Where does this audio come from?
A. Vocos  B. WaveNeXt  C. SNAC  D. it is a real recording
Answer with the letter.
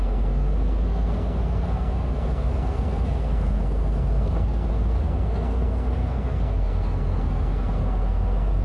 C